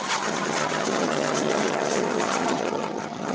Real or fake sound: fake